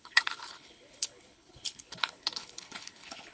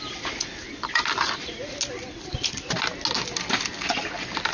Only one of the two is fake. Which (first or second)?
first